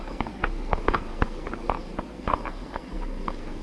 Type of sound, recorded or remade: remade